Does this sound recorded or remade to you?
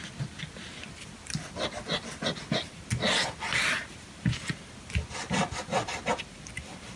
recorded